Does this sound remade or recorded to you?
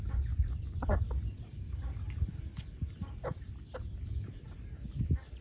recorded